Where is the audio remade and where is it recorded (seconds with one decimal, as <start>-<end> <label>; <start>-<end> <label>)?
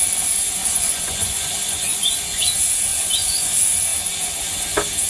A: 0.0-0.6 recorded; 0.6-2.5 remade; 2.5-2.9 recorded; 2.9-3.5 remade; 3.5-5.1 recorded